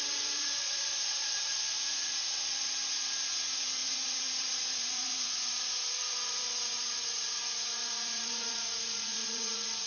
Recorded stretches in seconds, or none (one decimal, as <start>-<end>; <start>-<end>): none